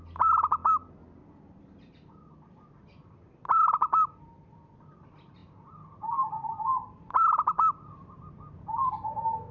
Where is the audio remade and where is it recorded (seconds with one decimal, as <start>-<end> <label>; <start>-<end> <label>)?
0.0-5.4 remade; 5.4-6.3 recorded; 6.3-9.5 remade